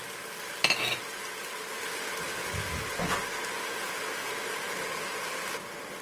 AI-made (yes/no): no